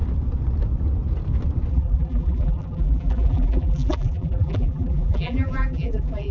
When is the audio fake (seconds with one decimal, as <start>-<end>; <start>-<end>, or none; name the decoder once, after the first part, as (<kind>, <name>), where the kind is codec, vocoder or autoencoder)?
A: 1.7-6.3 (vocoder, BigVGAN v2)